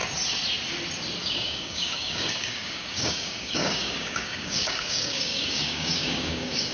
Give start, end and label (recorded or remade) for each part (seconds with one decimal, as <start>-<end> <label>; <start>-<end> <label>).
0.0-1.2 recorded; 1.2-6.7 remade